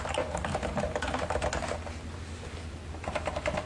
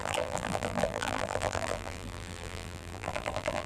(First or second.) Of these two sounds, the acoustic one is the first